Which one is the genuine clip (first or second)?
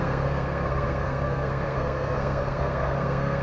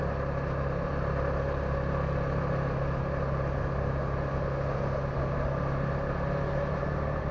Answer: second